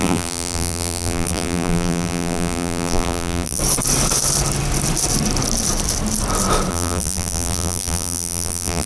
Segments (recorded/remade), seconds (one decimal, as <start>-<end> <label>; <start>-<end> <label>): 0.0-3.6 remade; 3.6-6.7 recorded; 6.7-8.9 remade